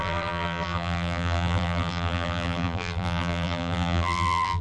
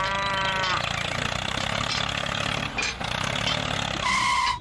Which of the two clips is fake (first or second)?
first